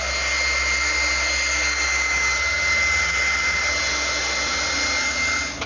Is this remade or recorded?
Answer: recorded